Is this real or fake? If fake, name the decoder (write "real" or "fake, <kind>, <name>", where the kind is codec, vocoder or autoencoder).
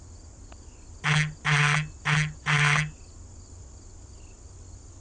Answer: real